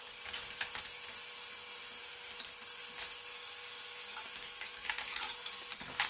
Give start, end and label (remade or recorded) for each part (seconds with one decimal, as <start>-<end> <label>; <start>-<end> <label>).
0.0-3.3 recorded; 3.3-5.2 remade; 5.2-6.1 recorded